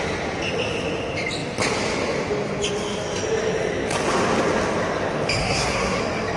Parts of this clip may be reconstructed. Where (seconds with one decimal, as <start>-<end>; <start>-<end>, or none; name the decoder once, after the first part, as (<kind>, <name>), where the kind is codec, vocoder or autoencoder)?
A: 5.4-6.0 (codec, SNAC)